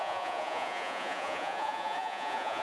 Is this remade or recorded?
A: remade